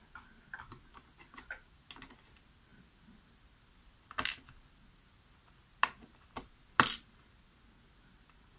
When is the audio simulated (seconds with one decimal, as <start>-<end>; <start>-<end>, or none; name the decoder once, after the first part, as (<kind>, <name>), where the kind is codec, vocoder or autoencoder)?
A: none